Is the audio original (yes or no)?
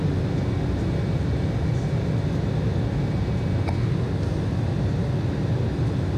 yes